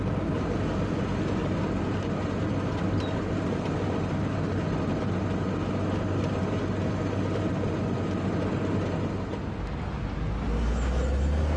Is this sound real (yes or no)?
yes